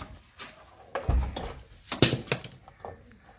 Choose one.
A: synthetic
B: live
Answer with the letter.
B